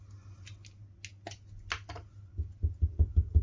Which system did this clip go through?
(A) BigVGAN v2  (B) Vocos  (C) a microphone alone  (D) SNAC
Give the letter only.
C